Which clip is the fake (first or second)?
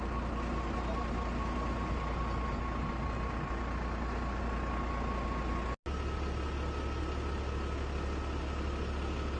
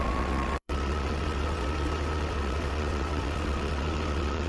second